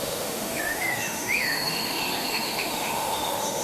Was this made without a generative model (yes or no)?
no